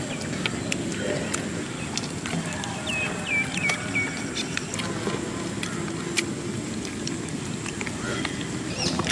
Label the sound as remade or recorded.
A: recorded